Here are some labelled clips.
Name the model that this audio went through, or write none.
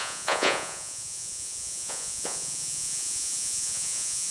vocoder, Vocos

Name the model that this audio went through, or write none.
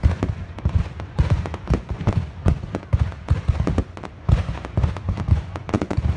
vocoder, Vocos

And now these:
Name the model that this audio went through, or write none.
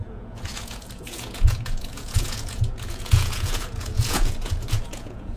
vocoder, Vocos